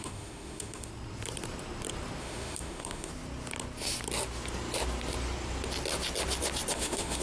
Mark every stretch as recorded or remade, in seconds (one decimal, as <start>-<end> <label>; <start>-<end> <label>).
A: 0.0-0.9 remade; 0.9-2.2 recorded; 2.2-3.1 remade; 3.1-6.7 recorded; 6.7-7.2 remade